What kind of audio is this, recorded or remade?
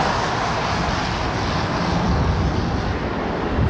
recorded